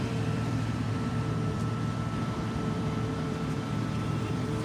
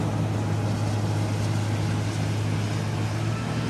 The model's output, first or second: first